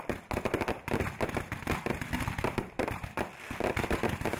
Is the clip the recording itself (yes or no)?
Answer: yes